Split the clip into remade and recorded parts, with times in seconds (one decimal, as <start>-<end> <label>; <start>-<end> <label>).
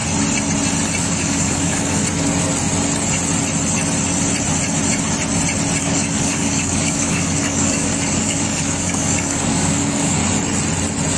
0.0-1.0 recorded; 1.0-2.0 remade; 2.0-5.8 recorded; 5.8-10.2 remade; 10.2-11.2 recorded